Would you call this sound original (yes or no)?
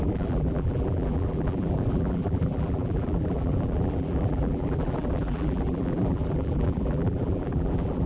no